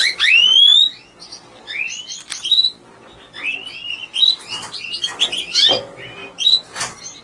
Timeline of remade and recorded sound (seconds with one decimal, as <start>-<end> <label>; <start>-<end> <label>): 0.0-7.2 recorded